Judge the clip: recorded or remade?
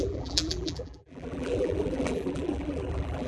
remade